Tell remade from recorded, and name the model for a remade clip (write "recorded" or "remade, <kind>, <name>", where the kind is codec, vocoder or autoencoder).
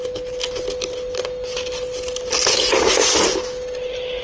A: recorded